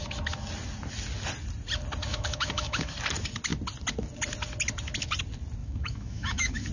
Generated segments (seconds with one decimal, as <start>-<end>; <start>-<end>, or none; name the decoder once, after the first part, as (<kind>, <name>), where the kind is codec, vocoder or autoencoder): 2.1-2.9 (autoencoder, DAC-VAE); 5.6-6.7